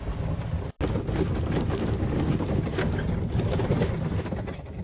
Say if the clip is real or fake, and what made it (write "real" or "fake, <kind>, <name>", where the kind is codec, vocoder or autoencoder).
real